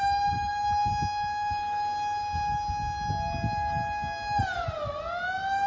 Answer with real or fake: real